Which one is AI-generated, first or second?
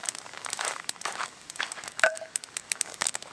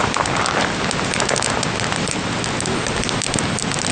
first